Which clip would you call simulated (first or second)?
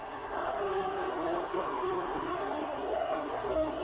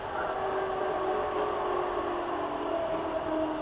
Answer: first